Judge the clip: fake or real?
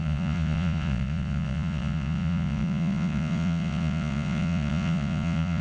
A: fake